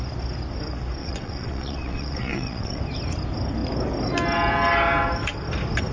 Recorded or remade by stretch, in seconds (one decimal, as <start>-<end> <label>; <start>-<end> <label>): 0.0-1.0 recorded; 1.0-2.8 remade; 2.8-5.9 recorded